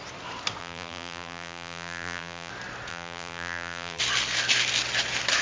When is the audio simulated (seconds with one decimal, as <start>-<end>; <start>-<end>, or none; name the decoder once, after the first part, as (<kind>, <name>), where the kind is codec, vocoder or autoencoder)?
0.6-2.5 (vocoder, BigVGAN v2); 2.9-4.0